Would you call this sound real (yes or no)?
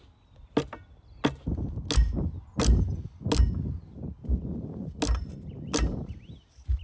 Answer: yes